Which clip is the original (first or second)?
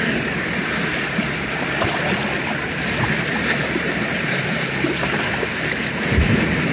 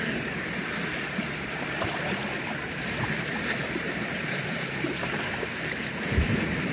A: first